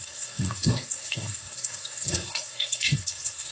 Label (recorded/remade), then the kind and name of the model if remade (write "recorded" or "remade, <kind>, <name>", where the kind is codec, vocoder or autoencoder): remade, codec, SNAC